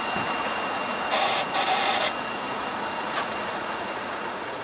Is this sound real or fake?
fake